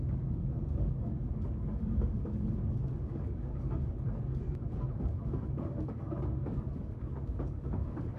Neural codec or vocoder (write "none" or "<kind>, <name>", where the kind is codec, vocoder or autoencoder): codec, DAC